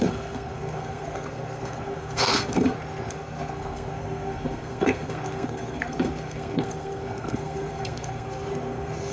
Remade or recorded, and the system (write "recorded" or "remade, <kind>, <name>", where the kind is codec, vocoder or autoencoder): remade, codec, SNAC